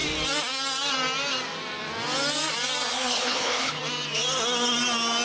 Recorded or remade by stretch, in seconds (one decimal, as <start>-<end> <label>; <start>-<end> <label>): 0.0-2.9 recorded; 2.9-3.8 remade; 3.8-5.2 recorded